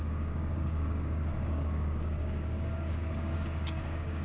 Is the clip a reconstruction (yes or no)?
yes